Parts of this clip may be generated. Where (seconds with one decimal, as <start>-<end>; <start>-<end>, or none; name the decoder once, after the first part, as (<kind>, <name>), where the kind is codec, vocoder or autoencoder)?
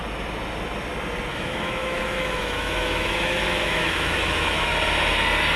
1.3-4.7 (autoencoder, DAC-VAE)